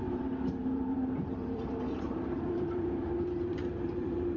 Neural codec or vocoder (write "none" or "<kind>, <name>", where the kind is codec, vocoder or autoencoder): vocoder, BigVGAN v2